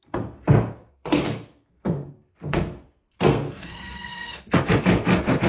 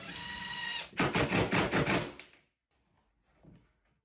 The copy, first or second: first